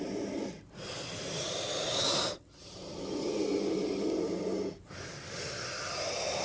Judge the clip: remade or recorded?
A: recorded